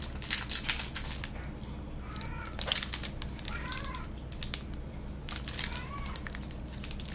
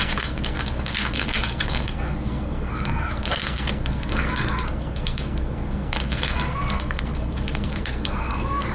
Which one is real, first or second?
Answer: first